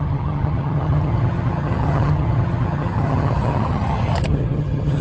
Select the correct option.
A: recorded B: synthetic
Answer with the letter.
B